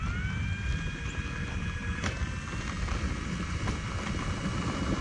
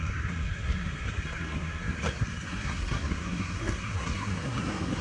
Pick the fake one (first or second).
second